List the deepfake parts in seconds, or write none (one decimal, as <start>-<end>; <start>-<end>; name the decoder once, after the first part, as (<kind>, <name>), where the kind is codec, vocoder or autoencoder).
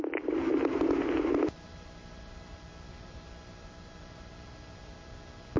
none